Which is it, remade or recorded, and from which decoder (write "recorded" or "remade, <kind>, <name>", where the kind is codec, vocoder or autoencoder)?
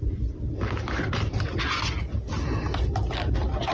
recorded